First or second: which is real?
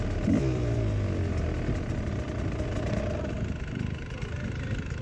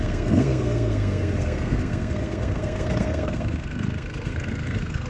first